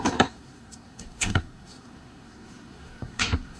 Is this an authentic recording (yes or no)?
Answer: no